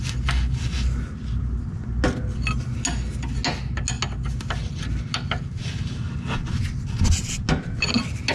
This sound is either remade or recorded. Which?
recorded